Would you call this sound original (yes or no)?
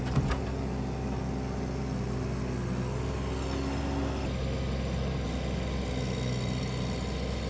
yes